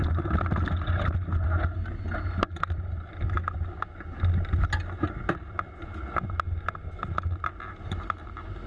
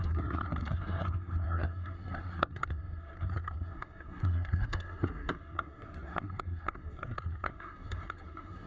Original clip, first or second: first